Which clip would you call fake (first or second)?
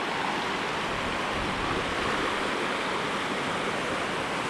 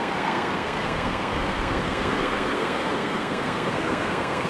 second